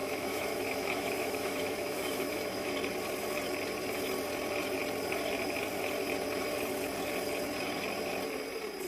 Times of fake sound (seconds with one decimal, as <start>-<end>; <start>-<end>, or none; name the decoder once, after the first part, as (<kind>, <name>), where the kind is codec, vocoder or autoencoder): 0.0-2.7 (autoencoder, DAC-VAE)